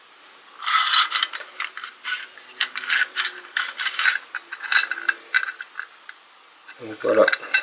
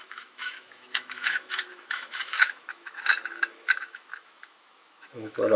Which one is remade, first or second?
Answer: second